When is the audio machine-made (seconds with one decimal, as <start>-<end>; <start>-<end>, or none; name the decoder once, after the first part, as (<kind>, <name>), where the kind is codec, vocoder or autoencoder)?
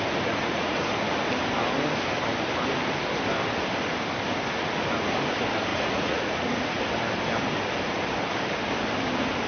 0.4-0.9 (vocoder, Vocos); 5.7-6.8